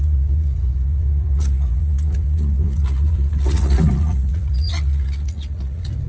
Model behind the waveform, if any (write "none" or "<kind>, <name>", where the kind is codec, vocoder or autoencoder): vocoder, Vocos